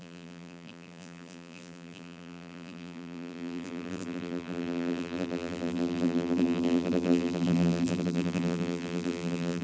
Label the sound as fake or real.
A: fake